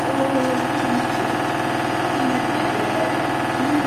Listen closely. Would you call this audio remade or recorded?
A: recorded